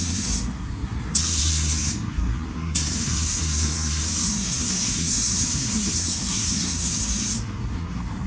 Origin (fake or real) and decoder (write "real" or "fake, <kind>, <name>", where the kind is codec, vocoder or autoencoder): fake, codec, SNAC